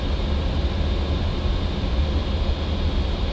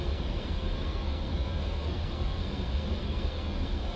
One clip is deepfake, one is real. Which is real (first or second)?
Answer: first